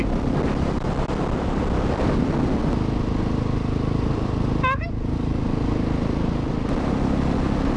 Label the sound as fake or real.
real